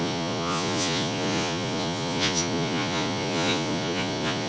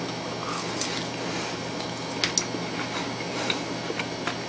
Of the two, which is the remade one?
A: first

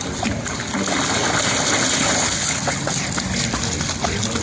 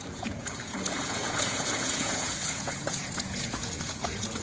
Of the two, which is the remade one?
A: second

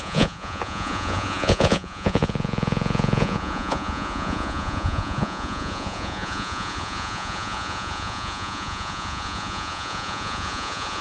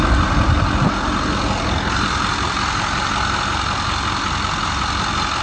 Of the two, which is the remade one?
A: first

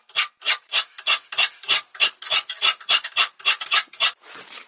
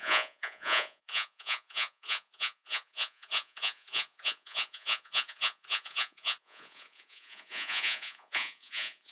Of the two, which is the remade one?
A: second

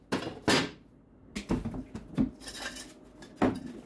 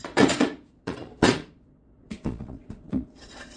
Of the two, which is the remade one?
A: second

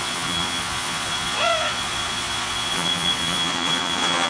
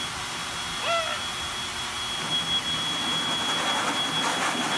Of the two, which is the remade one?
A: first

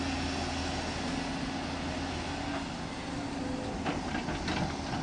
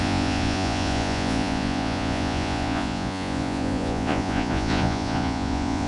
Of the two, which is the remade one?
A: second